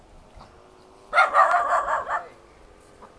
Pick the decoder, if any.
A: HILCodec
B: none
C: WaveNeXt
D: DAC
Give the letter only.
B